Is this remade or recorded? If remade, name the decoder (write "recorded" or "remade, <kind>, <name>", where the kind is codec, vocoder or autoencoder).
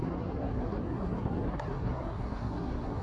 remade, codec, SNAC